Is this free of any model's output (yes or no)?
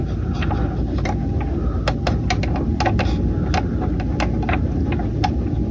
yes